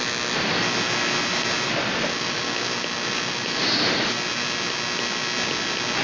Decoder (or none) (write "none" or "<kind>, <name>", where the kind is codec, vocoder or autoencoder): none